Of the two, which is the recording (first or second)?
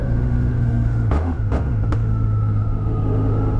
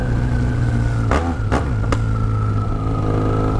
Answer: second